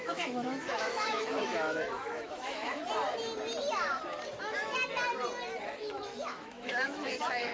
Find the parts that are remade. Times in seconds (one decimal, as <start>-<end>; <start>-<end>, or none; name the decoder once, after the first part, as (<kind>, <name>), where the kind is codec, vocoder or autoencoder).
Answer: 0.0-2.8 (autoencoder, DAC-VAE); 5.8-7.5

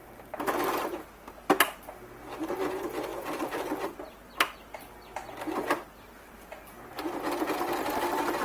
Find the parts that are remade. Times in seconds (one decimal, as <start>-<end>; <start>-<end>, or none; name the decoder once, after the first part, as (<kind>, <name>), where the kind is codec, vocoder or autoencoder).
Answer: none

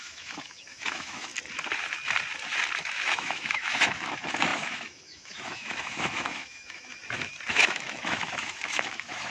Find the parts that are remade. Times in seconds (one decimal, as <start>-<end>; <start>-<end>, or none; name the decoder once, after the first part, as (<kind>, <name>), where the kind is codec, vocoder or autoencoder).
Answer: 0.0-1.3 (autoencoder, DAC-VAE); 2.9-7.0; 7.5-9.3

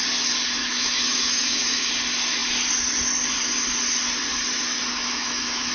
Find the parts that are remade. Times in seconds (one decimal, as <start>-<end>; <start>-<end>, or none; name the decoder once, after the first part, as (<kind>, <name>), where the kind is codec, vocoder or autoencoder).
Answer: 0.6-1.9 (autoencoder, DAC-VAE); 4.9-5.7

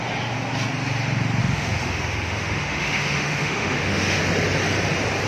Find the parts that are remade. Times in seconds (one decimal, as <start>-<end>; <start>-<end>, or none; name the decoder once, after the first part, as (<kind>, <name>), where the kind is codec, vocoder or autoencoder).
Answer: 1.4-4.2 (autoencoder, DAC-VAE)

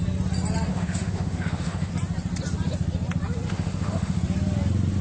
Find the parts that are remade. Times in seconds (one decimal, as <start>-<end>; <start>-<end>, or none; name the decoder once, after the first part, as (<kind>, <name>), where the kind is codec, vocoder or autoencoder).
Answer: 0.7-1.9 (autoencoder, DAC-VAE); 3.5-4.2

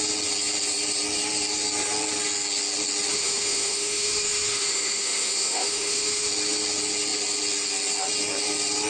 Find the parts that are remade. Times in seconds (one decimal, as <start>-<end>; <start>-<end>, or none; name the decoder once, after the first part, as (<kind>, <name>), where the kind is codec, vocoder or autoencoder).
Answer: 3.1-6.3 (autoencoder, DAC-VAE)

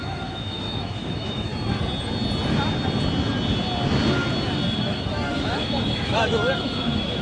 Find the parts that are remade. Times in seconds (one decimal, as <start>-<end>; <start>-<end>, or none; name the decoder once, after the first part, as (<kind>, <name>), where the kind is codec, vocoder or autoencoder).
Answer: 0.0-1.5 (autoencoder, DAC-VAE); 4.8-7.2